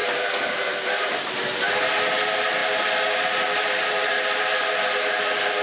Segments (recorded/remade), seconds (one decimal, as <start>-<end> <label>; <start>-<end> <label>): 0.0-5.6 recorded